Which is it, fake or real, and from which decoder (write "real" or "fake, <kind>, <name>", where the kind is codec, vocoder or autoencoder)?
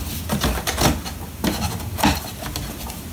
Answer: real